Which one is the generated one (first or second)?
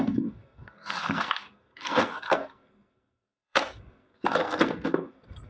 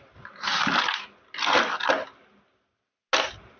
first